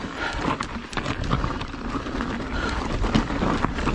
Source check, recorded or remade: recorded